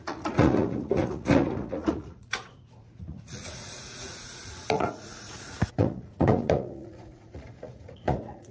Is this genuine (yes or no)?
no